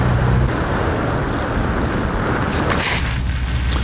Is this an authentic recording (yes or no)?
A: yes